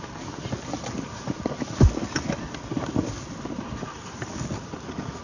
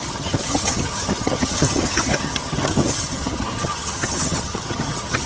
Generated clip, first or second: second